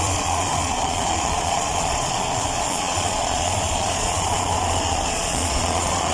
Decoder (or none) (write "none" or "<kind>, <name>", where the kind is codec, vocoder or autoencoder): vocoder, Vocos